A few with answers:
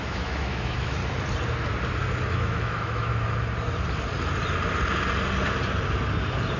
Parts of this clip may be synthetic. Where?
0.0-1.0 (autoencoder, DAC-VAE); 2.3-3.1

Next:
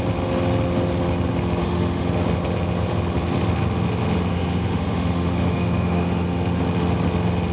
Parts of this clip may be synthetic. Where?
1.6-2.1 (autoencoder, DAC-VAE); 4.3-6.6

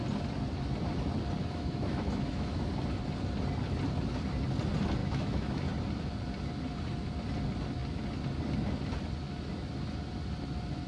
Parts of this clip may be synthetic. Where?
1.4-2.7 (autoencoder, DAC-VAE); 5.0-5.6

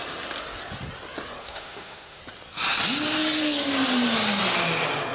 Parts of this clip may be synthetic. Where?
1.4-2.2 (autoencoder, DAC-VAE)

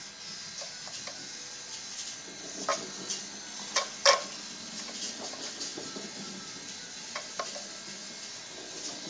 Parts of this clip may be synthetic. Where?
none